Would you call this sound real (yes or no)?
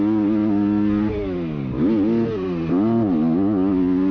yes